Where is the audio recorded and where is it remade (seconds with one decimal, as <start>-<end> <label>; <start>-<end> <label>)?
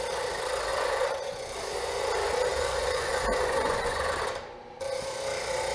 0.0-0.7 recorded; 0.7-2.0 remade; 2.0-2.5 recorded; 2.5-4.1 remade; 4.1-5.7 recorded